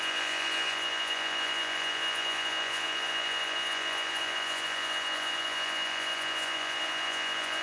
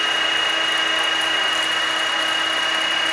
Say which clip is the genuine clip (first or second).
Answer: second